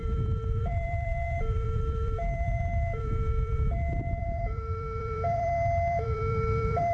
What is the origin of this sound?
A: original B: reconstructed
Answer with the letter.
B